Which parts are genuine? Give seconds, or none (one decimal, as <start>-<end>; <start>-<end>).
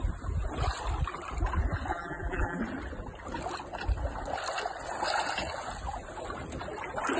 0.0-1.9; 2.6-7.2